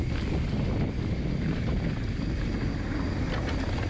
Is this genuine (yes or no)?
yes